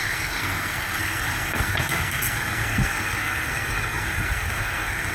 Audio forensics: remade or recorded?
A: remade